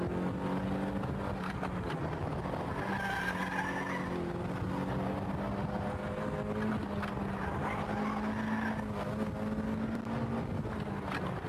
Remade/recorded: recorded